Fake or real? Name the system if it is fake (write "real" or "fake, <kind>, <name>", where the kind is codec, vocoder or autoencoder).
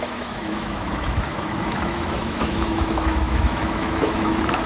fake, autoencoder, DAC-VAE